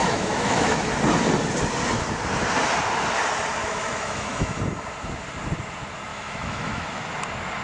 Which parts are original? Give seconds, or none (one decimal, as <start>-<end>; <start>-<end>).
0.9-3.6; 4.6-6.1; 7.0-7.6